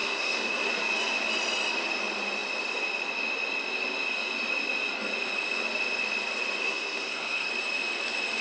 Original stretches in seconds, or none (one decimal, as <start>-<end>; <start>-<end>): 0.7-6.6; 7.5-8.4